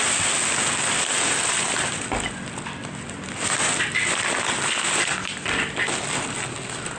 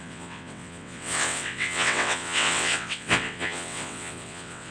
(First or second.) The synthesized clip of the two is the second